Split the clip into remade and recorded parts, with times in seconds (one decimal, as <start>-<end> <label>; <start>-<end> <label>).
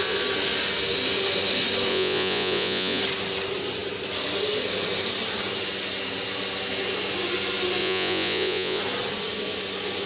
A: 0.0-1.9 recorded; 1.9-3.0 remade; 3.0-7.8 recorded; 7.8-8.8 remade; 8.8-10.1 recorded